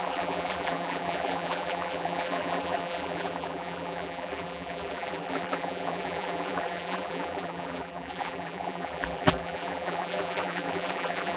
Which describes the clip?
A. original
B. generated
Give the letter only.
B